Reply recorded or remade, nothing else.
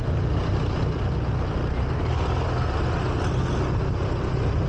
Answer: recorded